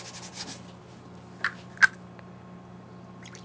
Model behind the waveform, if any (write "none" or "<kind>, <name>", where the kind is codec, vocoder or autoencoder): none